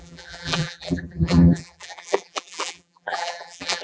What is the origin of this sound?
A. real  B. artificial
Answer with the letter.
B